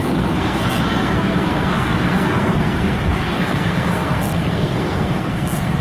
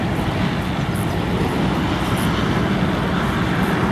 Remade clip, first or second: first